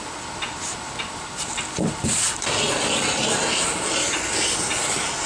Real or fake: real